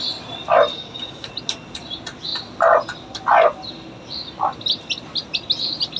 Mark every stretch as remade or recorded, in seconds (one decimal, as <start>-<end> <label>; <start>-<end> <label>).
0.0-0.7 recorded; 0.7-1.3 remade; 1.3-6.0 recorded